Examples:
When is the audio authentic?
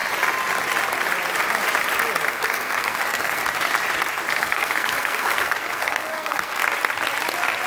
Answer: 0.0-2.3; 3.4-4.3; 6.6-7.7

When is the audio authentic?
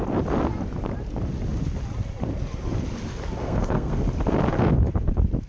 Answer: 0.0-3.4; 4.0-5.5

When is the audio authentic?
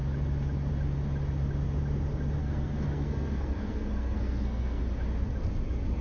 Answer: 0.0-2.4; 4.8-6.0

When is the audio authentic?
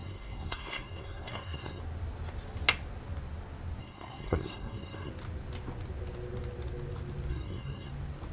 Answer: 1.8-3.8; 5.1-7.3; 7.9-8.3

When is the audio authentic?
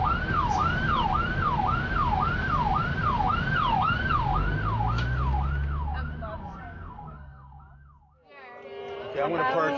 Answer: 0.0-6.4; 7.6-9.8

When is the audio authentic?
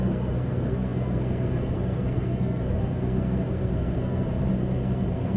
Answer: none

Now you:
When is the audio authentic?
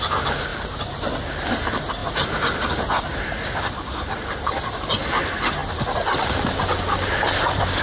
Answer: 0.0-7.8